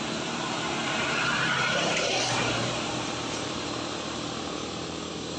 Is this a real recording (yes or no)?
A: no